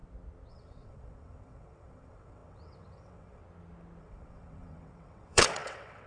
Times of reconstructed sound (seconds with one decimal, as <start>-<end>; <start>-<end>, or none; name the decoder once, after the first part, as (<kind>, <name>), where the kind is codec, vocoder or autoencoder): 0.5-3.4 (vocoder, WaveNeXt); 4.0-6.1